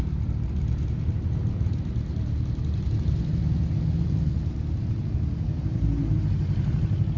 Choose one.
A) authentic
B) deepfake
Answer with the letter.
A